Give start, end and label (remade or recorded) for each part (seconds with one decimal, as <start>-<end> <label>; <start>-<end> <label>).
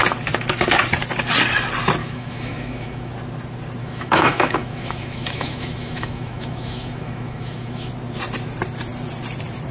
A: 0.0-2.0 recorded; 2.0-3.1 remade; 3.1-3.8 recorded; 3.8-7.9 remade; 7.9-9.7 recorded